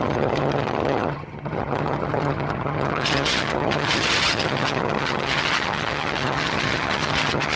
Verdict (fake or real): fake